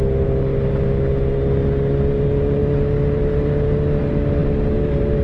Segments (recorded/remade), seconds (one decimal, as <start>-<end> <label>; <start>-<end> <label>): 0.0-5.2 recorded